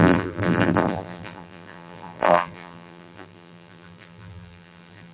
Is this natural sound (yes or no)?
no